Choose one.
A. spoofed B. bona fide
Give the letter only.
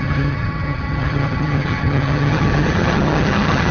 A